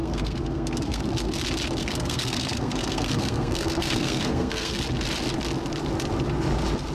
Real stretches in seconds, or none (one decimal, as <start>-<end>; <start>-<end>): 1.0-1.8; 4.8-6.9